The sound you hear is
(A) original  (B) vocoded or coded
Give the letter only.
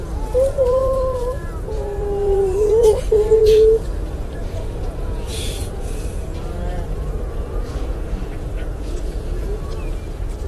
B